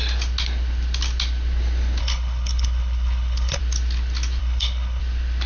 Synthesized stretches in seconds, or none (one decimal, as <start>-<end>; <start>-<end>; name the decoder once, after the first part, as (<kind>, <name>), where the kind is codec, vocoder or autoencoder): 2.0-3.6 (codec, HILCodec); 4.4-5.0